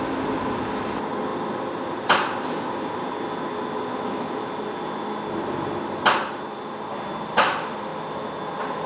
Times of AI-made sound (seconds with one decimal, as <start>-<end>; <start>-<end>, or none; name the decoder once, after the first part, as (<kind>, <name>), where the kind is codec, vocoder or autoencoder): none